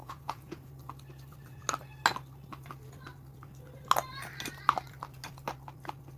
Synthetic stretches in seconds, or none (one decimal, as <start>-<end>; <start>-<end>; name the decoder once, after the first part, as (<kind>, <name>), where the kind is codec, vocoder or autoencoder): 0.0-0.7 (vocoder, Vocos)